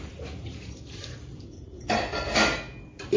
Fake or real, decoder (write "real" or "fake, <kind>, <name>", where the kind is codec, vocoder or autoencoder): fake, vocoder, BigVGAN v2